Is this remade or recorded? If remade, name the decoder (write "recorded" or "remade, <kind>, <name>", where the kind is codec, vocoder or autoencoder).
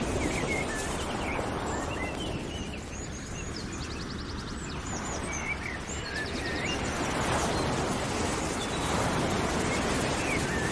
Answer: recorded